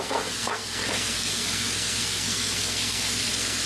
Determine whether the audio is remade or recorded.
remade